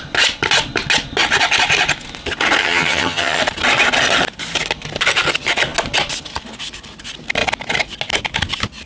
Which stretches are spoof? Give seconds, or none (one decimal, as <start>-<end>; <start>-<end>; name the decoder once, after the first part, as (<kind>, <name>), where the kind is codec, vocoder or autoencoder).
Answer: 2.6-3.4 (vocoder, HiFi-GAN)